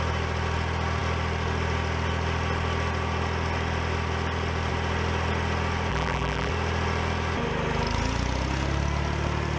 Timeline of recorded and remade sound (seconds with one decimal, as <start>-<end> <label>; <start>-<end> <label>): 0.0-5.9 recorded; 5.9-6.5 remade; 6.5-9.6 recorded